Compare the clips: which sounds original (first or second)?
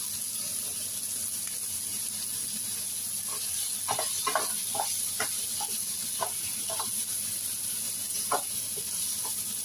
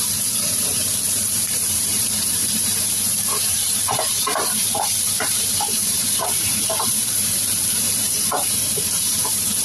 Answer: first